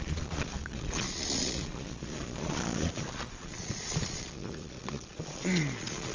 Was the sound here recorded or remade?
remade